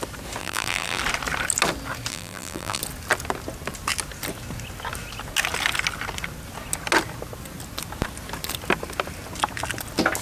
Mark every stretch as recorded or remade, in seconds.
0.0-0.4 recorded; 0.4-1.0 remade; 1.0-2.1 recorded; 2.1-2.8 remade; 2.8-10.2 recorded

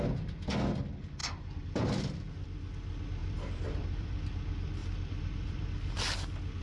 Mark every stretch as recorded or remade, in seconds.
0.0-1.2 recorded; 1.2-2.3 remade; 2.3-3.2 recorded; 3.2-4.2 remade; 4.2-4.8 recorded; 4.8-6.0 remade; 6.0-6.6 recorded

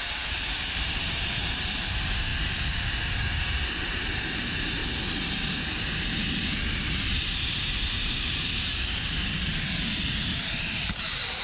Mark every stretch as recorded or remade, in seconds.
0.0-2.3 remade; 2.3-3.4 recorded; 3.4-4.8 remade; 4.8-5.6 recorded; 5.6-11.4 remade

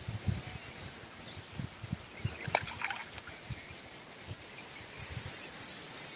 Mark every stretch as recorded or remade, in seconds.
0.0-3.0 recorded; 3.0-4.5 remade; 4.5-6.2 recorded

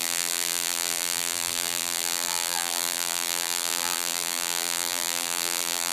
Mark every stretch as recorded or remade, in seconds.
0.0-5.9 remade

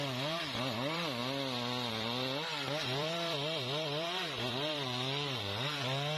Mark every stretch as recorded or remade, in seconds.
0.0-1.2 remade; 1.2-1.9 recorded; 1.9-6.2 remade